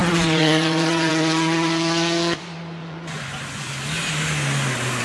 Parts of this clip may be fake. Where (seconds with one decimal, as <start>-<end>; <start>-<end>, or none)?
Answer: 0.0-1.1; 2.8-3.7